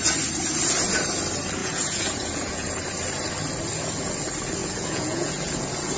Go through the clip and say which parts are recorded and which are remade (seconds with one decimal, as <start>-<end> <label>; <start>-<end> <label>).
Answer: 0.0-1.6 recorded; 1.6-2.8 remade; 2.8-4.6 recorded; 4.6-6.0 remade